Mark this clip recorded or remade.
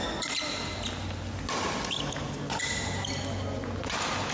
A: recorded